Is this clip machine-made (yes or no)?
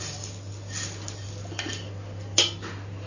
no